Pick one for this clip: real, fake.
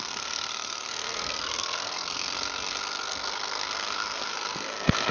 fake